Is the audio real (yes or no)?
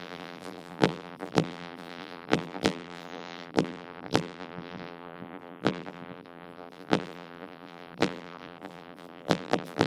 no